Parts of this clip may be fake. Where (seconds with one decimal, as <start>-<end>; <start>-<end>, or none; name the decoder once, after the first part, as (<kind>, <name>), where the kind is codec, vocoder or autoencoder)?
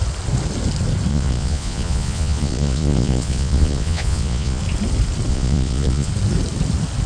1.1-4.6 (vocoder, Vocos); 5.3-6.1